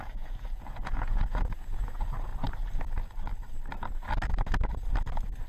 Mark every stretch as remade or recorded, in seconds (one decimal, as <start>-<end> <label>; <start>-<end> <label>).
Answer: 0.0-2.3 remade; 2.3-5.5 recorded